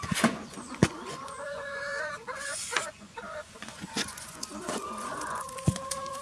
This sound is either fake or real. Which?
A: fake